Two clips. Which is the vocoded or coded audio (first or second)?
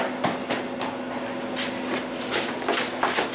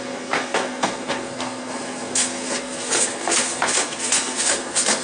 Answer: second